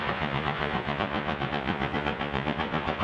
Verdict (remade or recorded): remade